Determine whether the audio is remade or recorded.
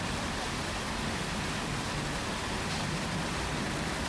recorded